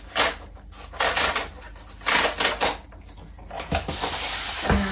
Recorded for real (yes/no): yes